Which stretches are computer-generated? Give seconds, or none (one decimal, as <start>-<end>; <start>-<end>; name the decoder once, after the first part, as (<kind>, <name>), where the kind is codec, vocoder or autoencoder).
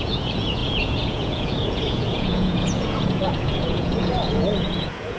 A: 0.0-5.2 (vocoder, Vocos)